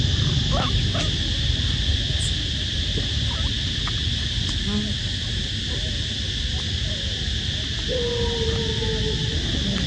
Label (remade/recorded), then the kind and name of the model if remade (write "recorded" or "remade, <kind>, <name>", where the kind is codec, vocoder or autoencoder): recorded